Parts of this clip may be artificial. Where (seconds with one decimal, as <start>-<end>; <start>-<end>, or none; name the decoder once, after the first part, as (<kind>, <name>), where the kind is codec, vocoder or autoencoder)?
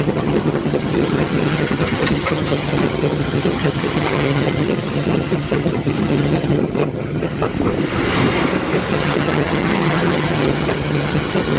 0.0-7.5 (vocoder, HiFi-GAN); 8.9-11.6